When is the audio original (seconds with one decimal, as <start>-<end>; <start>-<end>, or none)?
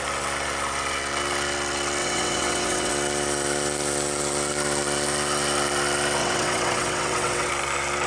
0.0-2.0; 2.9-6.2; 7.5-8.1